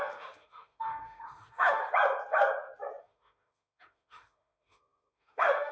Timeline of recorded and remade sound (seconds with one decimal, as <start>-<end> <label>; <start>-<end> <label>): 0.0-1.8 remade; 1.8-3.0 recorded; 3.0-5.7 remade